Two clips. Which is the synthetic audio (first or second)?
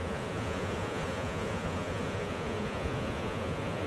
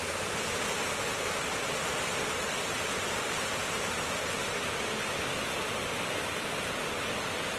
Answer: first